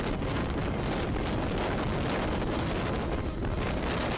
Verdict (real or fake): real